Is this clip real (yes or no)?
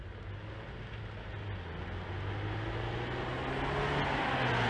yes